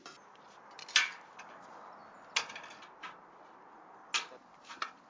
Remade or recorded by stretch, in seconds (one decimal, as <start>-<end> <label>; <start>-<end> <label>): 0.0-5.1 recorded